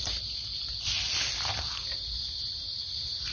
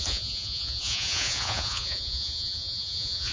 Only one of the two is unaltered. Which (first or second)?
first